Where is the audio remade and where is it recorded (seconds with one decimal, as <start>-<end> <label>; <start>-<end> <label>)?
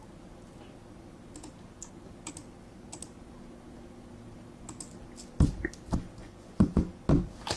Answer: 0.0-6.2 recorded; 6.2-7.0 remade; 7.0-7.6 recorded